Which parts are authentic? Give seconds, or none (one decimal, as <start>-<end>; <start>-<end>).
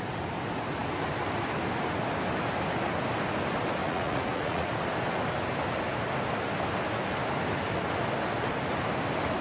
0.0-3.8; 4.7-9.4